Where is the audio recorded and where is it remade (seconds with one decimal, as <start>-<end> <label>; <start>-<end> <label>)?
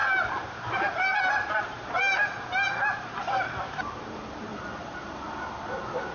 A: 0.0-4.5 remade; 4.5-6.1 recorded